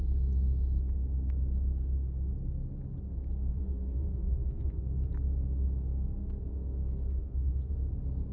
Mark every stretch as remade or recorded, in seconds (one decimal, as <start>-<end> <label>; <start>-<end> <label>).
0.0-3.5 recorded; 3.5-4.8 remade; 4.8-7.2 recorded; 7.2-7.7 remade; 7.7-8.3 recorded